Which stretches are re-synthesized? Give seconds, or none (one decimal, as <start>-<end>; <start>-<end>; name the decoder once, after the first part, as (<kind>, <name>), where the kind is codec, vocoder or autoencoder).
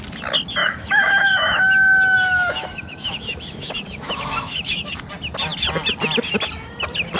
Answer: 0.6-4.9 (autoencoder, DAC-VAE)